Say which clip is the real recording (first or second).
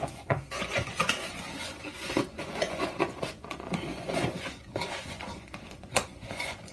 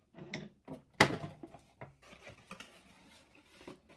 second